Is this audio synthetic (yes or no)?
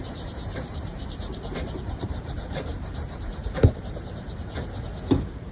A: yes